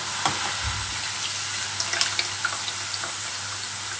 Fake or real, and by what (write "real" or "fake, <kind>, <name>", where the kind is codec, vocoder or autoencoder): real